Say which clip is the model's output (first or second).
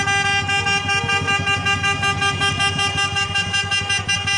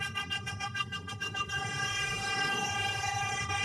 second